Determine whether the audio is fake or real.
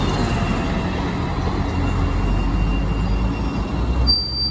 real